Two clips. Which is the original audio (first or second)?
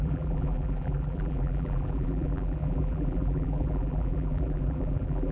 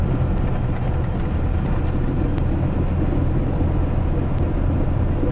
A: second